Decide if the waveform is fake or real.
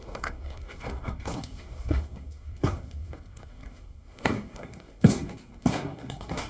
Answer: fake